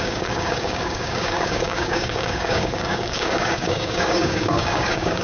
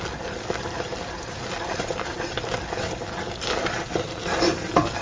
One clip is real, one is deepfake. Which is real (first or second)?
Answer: second